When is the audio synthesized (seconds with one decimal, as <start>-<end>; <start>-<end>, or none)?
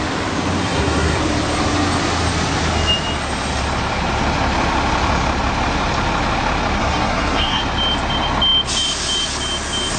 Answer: 0.6-1.2; 6.8-7.6